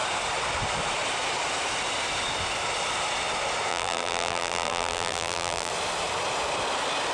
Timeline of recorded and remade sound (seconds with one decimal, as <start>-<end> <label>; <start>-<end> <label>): 0.0-3.7 recorded; 3.7-5.7 remade; 5.7-7.1 recorded